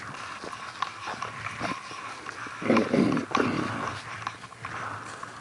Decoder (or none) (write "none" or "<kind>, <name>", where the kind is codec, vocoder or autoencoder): none